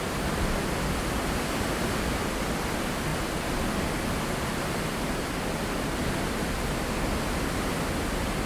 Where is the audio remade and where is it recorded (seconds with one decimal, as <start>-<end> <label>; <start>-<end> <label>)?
0.0-8.5 recorded